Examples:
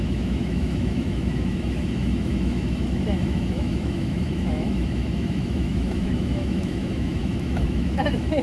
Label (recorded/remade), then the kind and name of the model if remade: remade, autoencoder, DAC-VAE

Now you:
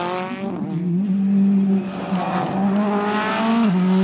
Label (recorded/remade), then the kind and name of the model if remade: recorded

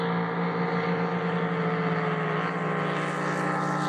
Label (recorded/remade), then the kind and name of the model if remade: recorded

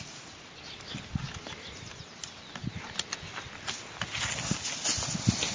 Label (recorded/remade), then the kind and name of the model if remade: recorded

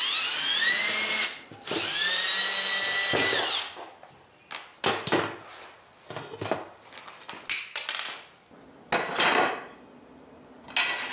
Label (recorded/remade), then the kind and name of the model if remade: recorded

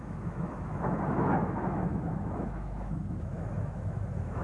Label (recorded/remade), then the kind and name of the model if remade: remade, autoencoder, DAC-VAE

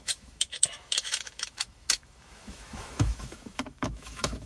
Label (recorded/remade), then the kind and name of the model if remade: remade, autoencoder, DAC-VAE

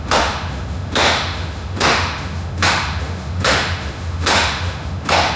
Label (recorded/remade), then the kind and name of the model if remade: remade, autoencoder, DAC-VAE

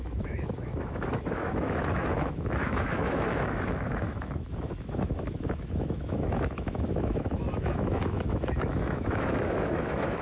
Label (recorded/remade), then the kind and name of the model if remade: remade, autoencoder, DAC-VAE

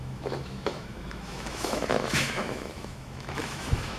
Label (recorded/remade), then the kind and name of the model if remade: remade, autoencoder, DAC-VAE